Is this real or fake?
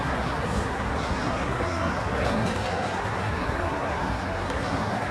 fake